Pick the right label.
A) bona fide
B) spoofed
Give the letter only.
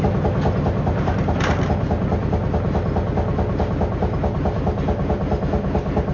A